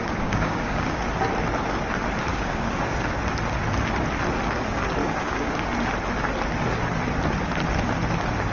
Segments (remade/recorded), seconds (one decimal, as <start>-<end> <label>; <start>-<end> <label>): 0.0-1.0 remade; 1.0-2.3 recorded; 2.3-3.2 remade; 3.2-5.0 recorded; 5.0-5.6 remade; 5.6-8.5 recorded